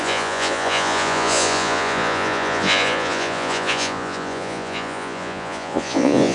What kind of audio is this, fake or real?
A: fake